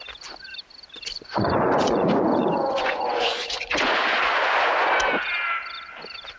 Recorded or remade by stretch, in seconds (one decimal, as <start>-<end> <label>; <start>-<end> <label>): 0.0-1.1 recorded; 1.1-4.9 remade; 4.9-6.4 recorded